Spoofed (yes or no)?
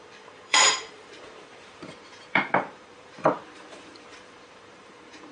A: yes